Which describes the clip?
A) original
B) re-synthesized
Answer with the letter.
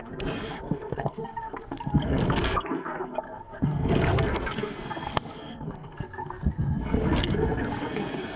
B